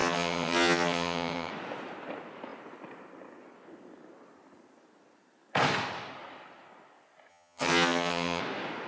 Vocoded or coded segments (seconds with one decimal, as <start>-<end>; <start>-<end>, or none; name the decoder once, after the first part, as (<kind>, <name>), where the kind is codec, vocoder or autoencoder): 0.0-1.5 (vocoder, HiFi-GAN); 7.3-8.4